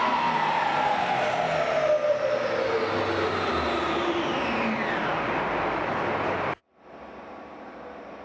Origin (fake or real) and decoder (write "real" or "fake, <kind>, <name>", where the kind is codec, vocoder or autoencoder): real